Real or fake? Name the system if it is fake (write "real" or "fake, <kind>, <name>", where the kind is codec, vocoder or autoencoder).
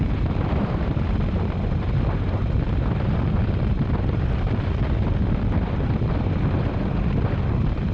fake, vocoder, BigVGAN v2